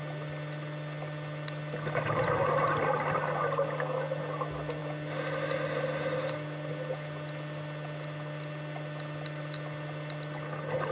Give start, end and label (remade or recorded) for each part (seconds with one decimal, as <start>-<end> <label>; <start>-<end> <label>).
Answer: 0.0-10.9 recorded